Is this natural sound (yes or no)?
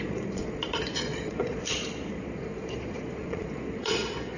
no